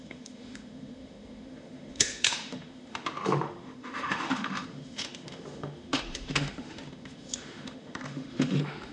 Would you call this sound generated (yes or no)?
yes